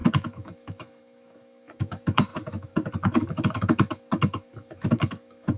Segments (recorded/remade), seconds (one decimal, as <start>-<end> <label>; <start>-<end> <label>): 0.0-5.6 remade